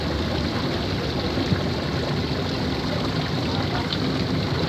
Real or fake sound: real